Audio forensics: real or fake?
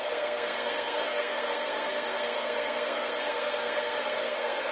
fake